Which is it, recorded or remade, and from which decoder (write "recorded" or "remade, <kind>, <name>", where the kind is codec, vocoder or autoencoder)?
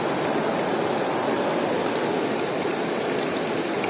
recorded